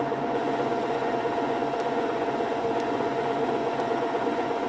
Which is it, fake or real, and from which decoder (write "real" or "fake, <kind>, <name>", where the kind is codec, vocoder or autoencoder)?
fake, vocoder, Vocos